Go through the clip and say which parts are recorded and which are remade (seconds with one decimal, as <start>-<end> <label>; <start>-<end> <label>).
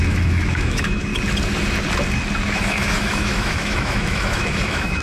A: 0.0-1.1 remade; 1.1-2.5 recorded; 2.5-5.0 remade